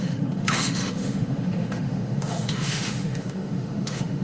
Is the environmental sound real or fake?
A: fake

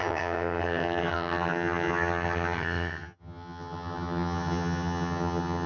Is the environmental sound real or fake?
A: fake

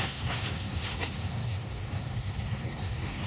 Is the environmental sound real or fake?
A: fake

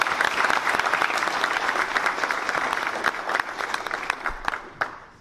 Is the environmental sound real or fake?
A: real